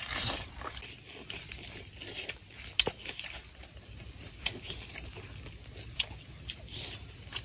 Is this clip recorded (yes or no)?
yes